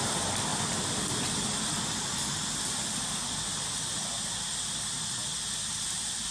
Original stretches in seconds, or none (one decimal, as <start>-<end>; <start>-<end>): 0.0-6.3